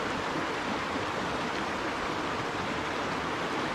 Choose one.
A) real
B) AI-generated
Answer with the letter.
A